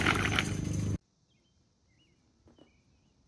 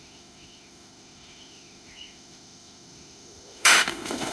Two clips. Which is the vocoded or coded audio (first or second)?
second